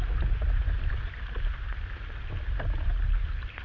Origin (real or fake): real